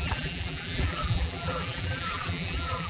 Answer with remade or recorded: remade